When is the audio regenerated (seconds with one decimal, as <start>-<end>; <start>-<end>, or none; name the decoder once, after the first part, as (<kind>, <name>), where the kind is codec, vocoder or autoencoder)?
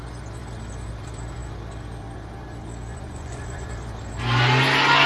2.9-3.7 (vocoder, Vocos)